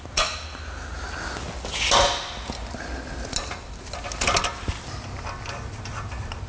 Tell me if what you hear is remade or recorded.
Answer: recorded